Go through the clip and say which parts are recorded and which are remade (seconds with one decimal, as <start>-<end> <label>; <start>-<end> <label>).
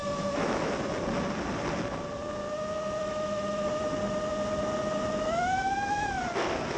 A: 0.0-0.7 remade; 0.7-3.0 recorded; 3.0-3.7 remade; 3.7-5.1 recorded; 5.1-6.2 remade; 6.2-6.8 recorded